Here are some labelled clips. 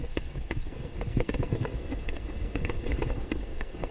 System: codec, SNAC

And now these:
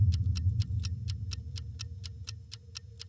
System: none